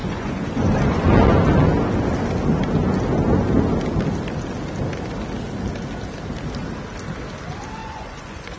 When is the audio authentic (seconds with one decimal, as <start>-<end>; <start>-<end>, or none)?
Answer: 1.0-7.8